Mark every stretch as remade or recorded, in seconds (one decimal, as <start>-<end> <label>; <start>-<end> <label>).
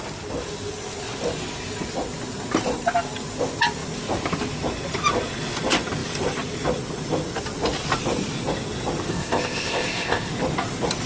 0.0-9.1 recorded; 9.1-10.3 remade; 10.3-11.1 recorded